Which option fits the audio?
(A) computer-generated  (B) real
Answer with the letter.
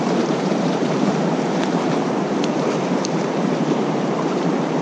A